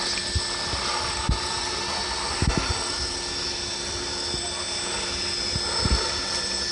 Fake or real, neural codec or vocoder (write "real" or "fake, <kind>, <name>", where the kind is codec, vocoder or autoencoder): real